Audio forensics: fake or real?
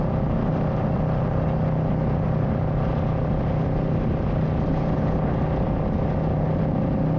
real